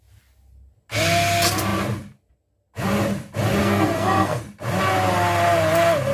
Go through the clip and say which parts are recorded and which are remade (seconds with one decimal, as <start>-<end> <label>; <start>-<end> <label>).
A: 0.0-3.6 recorded; 3.6-4.4 remade; 4.4-6.1 recorded